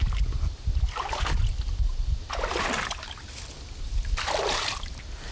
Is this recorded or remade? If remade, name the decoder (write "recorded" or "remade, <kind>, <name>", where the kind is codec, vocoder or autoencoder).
recorded